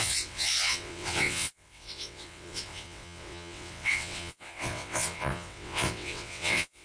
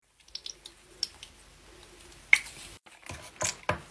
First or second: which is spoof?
first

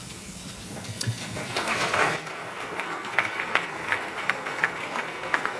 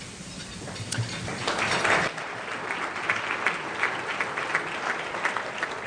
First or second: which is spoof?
first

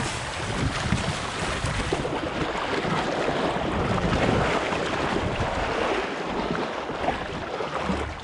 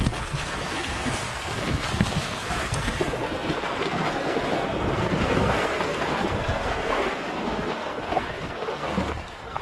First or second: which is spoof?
second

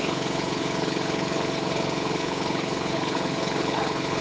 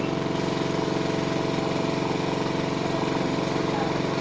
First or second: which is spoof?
first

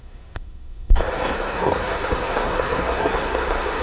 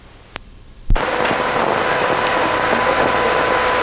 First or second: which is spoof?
first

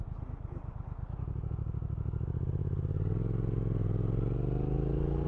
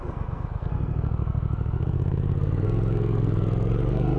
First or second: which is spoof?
second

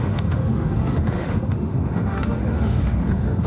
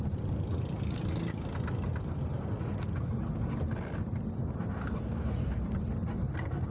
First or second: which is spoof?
first